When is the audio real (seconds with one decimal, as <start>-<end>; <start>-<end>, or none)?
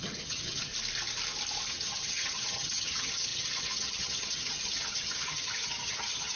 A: 0.7-1.7